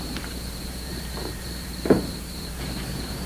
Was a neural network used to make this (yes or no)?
yes